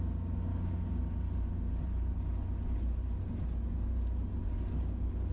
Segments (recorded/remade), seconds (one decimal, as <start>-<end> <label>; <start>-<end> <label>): 0.0-0.5 recorded; 0.5-1.0 remade; 1.0-5.3 recorded